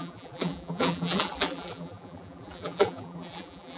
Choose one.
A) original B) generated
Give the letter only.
B